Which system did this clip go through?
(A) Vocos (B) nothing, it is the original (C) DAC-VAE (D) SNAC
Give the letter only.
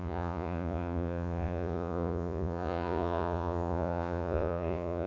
A